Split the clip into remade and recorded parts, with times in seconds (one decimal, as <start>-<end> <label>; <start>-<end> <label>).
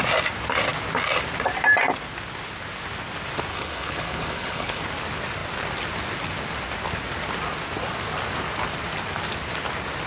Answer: 0.0-3.5 recorded; 3.5-4.8 remade; 4.8-10.1 recorded